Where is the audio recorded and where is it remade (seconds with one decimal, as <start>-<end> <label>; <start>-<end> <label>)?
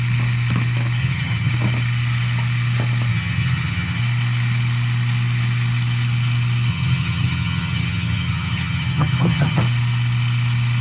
0.0-1.0 recorded; 1.0-1.5 remade; 1.5-3.1 recorded; 3.1-4.0 remade; 4.0-6.7 recorded; 6.7-9.6 remade; 9.6-10.8 recorded